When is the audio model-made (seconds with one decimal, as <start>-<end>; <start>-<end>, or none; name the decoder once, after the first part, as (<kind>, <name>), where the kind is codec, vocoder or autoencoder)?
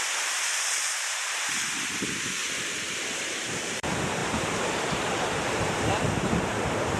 0.0-2.4 (vocoder, BigVGAN v2); 3.1-7.0